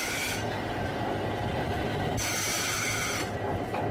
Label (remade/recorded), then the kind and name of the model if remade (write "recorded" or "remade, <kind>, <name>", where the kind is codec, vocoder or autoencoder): recorded